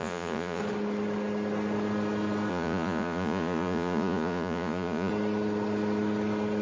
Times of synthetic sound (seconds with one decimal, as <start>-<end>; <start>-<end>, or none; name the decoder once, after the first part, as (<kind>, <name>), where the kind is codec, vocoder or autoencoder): 0.0-0.6 (vocoder, Vocos); 2.5-5.1